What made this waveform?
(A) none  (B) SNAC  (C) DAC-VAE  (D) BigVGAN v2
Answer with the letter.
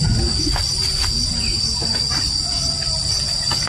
A